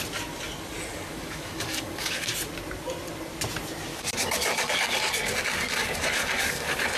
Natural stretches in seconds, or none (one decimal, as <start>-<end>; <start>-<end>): 0.0-0.9; 2.3-3.9; 5.3-5.8

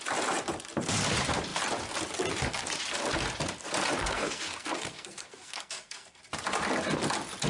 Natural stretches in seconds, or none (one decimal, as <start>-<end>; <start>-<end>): 0.0-4.0; 6.2-7.5

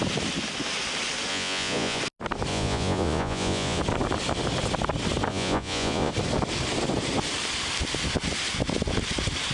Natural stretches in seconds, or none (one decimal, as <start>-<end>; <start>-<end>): 0.0-1.3; 2.0-2.5; 3.8-5.3; 6.1-9.5

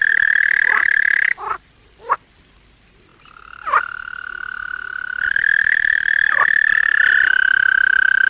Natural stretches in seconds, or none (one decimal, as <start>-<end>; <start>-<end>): 0.0-8.3

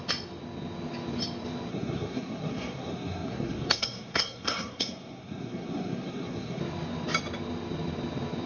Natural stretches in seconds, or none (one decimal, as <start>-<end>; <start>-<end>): 0.0-1.7; 6.6-8.5

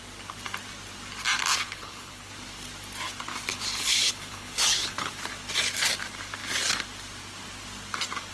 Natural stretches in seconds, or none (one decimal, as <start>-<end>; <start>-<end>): 0.0-1.5; 2.3-3.5; 5.1-8.3

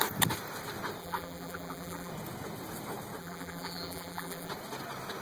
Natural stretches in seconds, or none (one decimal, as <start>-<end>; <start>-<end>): 0.0-1.0; 2.1-3.2; 4.5-5.2

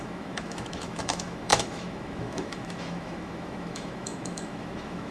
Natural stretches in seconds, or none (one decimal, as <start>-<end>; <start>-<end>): none